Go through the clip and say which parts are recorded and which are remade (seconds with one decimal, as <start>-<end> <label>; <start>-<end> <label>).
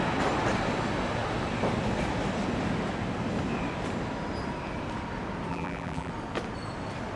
0.0-5.5 recorded; 5.5-6.1 remade; 6.1-7.2 recorded